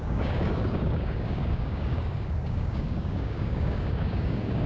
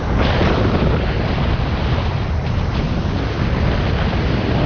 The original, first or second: second